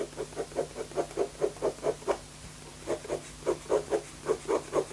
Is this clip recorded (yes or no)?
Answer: yes